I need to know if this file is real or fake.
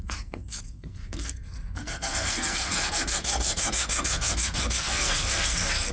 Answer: fake